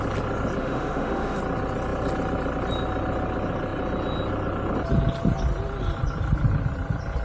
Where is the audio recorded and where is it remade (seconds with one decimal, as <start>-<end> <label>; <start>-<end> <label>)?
0.0-0.6 recorded; 0.6-1.4 remade; 1.4-7.2 recorded